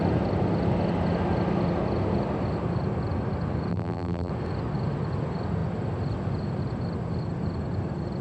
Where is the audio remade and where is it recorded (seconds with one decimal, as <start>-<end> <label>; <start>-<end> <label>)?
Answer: 0.0-3.7 recorded; 3.7-4.3 remade; 4.3-8.2 recorded